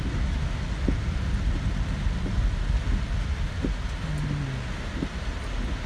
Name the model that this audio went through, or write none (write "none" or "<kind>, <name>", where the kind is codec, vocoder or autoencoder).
none